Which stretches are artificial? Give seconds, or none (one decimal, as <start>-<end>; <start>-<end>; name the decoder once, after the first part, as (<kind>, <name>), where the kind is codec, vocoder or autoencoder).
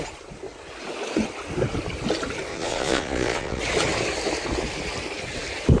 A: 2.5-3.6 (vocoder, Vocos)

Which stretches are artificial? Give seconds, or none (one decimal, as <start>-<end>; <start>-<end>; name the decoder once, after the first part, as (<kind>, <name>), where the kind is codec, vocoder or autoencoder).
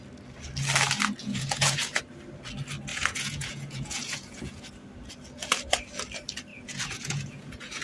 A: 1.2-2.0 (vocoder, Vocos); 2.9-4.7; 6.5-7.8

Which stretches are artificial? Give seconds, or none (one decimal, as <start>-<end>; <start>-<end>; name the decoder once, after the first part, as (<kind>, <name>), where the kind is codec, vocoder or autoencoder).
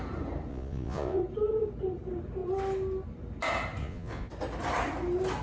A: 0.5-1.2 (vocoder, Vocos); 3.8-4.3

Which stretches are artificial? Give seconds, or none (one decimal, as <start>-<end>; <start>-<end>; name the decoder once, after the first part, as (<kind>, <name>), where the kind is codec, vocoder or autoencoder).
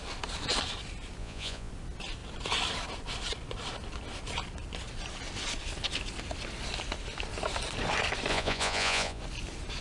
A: 1.2-1.7 (vocoder, Vocos); 8.3-9.2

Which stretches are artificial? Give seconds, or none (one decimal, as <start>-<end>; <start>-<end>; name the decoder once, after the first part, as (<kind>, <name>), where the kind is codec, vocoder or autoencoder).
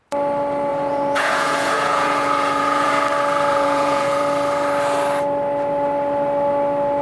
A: 0.7-2.9 (vocoder, Vocos); 3.5-4.2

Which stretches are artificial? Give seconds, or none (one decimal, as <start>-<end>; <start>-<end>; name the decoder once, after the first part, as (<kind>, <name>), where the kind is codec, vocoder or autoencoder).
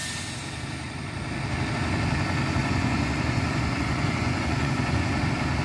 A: 2.6-5.1 (vocoder, Vocos)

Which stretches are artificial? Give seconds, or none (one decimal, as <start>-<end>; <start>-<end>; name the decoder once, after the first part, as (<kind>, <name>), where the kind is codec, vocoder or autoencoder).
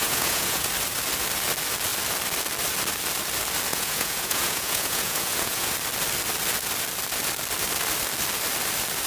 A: 0.0-0.7 (vocoder, Vocos); 3.7-5.7